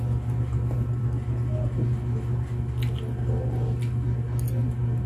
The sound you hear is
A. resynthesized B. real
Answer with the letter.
B